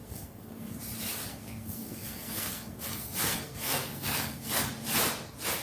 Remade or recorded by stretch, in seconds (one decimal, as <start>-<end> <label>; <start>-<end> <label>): 0.0-0.8 remade; 0.8-1.3 recorded; 1.3-4.7 remade; 4.7-5.6 recorded